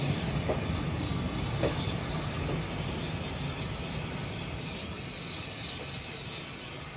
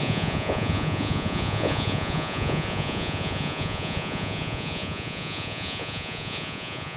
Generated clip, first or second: second